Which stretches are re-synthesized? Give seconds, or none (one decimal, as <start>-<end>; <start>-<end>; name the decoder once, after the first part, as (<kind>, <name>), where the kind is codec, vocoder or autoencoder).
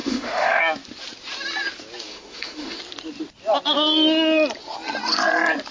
0.0-0.6 (autoencoder, DAC-VAE); 2.1-2.8